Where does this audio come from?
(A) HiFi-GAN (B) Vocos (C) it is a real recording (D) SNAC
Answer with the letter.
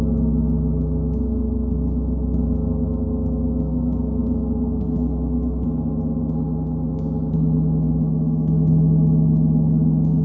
C